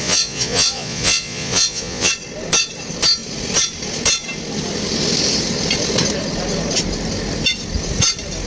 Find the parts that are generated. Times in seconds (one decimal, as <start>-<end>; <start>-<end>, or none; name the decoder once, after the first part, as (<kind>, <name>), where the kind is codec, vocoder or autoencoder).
0.0-2.1 (vocoder, Vocos)